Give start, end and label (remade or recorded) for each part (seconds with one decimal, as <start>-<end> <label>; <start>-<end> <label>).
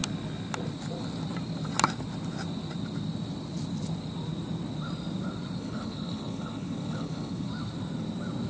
0.0-5.6 recorded; 5.6-7.5 remade; 7.5-8.5 recorded